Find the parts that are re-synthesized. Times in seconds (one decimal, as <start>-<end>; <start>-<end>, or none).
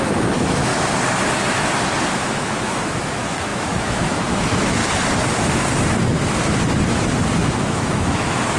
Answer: 0.0-0.7; 2.1-4.8; 7.4-8.6